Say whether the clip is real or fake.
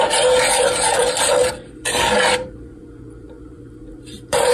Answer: fake